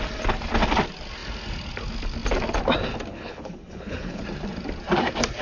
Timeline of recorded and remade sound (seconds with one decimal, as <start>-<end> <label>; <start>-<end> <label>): 0.0-3.1 recorded; 3.1-4.2 remade; 4.2-5.4 recorded